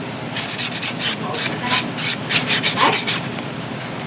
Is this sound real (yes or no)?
yes